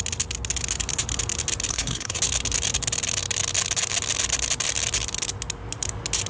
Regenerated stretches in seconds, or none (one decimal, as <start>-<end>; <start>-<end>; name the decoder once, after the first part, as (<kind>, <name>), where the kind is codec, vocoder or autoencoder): 1.7-2.2 (codec, SNAC)